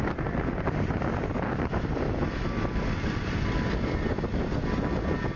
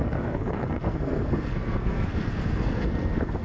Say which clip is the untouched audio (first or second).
first